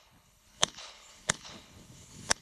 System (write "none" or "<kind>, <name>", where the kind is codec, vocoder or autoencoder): codec, HILCodec